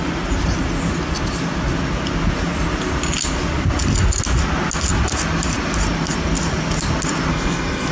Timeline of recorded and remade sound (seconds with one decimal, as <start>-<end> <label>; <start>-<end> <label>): 0.0-7.3 recorded; 7.3-7.9 remade